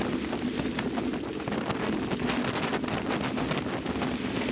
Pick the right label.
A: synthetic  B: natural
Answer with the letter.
B